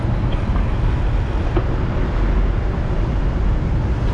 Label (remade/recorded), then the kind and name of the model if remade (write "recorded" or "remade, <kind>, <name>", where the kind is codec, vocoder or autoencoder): recorded